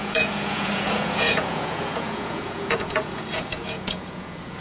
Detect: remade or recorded remade